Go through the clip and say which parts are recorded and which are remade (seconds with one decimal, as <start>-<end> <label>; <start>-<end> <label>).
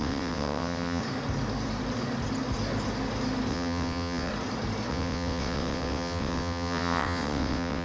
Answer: 0.0-1.0 remade; 1.0-3.5 recorded; 3.5-4.3 remade; 4.3-4.9 recorded; 4.9-7.8 remade